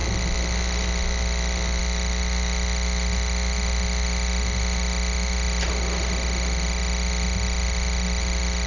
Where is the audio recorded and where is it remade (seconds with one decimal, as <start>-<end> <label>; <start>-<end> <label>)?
0.0-8.7 recorded

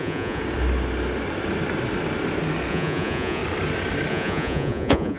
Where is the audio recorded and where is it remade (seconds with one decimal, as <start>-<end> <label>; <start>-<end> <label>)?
0.0-0.4 remade; 0.4-2.7 recorded; 2.7-3.4 remade; 3.4-4.1 recorded; 4.1-5.2 remade

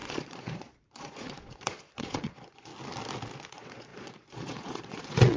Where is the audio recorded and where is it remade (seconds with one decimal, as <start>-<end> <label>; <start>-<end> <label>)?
0.0-2.7 remade; 2.7-3.5 recorded; 3.5-5.4 remade

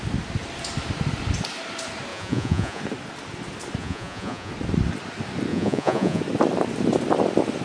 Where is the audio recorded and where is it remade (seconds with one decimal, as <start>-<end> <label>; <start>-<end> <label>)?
0.0-2.1 recorded; 2.1-2.8 remade; 2.8-3.8 recorded; 3.8-4.5 remade; 4.5-5.5 recorded; 5.5-6.2 remade; 6.2-7.6 recorded

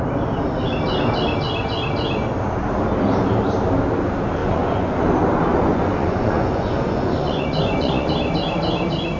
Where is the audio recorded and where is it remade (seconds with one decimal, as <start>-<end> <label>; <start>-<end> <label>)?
0.0-4.4 recorded; 4.4-5.0 remade; 5.0-5.5 recorded; 5.5-8.1 remade; 8.1-9.2 recorded

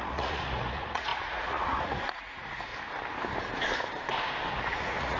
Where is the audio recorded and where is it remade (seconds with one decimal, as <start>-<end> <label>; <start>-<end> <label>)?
0.0-2.7 remade; 2.7-4.6 recorded; 4.6-5.2 remade